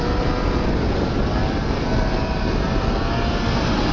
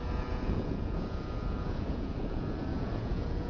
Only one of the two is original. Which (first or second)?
first